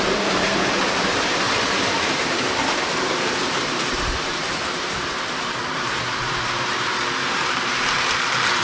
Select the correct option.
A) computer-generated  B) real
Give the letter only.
A